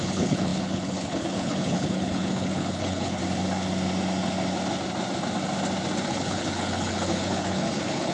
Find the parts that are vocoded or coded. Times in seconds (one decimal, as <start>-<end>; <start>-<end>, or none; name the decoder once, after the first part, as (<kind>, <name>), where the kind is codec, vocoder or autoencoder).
0.0-3.2 (codec, HILCodec); 6.1-8.1